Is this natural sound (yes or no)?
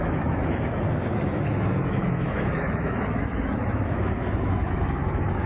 no